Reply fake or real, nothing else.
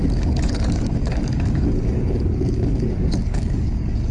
fake